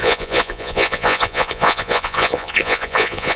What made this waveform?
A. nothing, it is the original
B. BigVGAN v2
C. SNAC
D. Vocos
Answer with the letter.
D